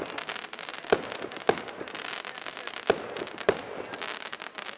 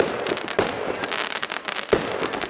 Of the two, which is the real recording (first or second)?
first